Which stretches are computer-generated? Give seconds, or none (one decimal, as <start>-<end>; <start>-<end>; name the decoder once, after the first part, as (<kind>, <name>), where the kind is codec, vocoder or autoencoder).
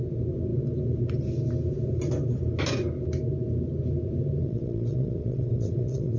4.4-6.2 (vocoder, WaveNeXt)